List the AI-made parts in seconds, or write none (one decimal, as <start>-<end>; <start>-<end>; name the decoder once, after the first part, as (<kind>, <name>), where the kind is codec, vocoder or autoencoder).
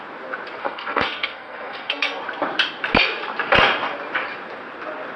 0.6-2.2 (codec, SNAC)